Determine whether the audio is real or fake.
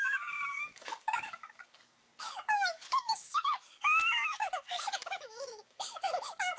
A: fake